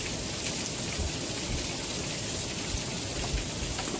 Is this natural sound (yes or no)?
yes